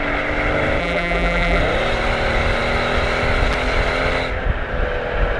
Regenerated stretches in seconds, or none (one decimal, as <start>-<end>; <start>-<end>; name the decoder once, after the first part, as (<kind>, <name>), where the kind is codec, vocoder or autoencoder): 0.8-1.6 (vocoder, BigVGAN v2)